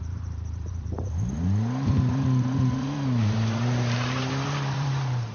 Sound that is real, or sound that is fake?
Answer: fake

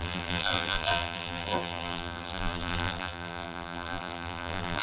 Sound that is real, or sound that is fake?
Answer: fake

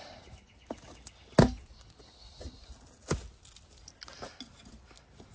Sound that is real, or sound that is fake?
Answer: real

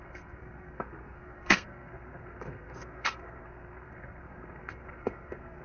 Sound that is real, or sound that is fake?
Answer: fake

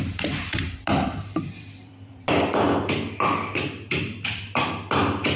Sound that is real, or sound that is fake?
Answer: fake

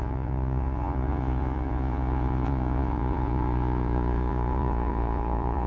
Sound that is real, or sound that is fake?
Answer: fake